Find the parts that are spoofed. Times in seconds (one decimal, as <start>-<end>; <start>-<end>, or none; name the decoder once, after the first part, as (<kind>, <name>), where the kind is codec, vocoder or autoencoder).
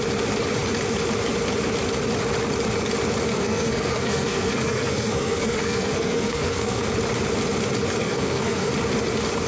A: 3.3-6.8 (codec, SNAC); 8.0-8.7